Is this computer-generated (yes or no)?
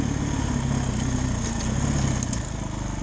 no